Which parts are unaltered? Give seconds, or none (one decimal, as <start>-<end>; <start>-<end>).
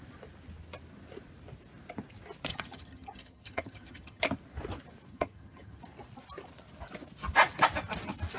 0.0-2.5; 4.2-5.1; 5.8-8.4